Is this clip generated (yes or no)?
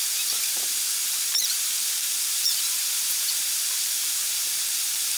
yes